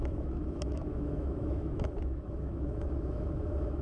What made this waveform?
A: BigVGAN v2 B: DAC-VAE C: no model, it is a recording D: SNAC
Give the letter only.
B